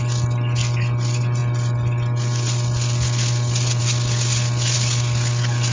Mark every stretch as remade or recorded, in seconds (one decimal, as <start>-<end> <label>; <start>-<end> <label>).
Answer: 0.0-5.7 recorded